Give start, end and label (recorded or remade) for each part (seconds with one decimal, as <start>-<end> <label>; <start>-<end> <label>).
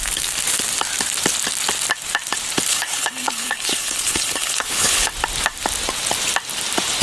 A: 0.0-2.7 recorded; 2.7-5.1 remade; 5.1-7.0 recorded